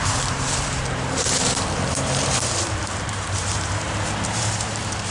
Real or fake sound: fake